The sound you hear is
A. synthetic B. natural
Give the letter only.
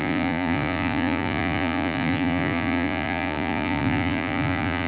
A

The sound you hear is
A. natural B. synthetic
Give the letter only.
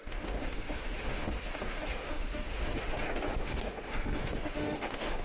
B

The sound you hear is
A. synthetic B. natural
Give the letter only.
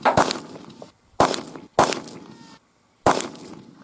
B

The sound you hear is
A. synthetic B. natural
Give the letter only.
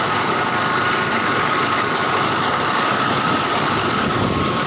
A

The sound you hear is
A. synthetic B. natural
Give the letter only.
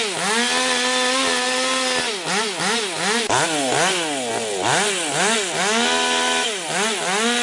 B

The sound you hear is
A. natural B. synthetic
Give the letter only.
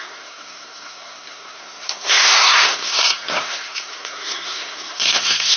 B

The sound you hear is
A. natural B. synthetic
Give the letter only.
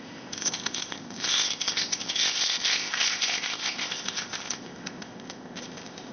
B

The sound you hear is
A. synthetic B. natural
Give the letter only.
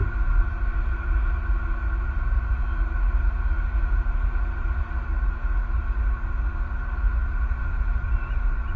B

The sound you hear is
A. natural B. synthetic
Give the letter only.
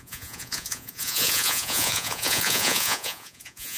B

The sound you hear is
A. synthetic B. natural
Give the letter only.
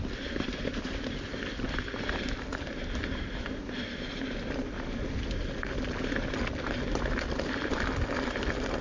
B